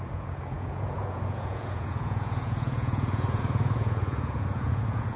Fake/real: fake